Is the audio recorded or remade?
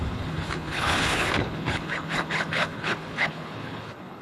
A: remade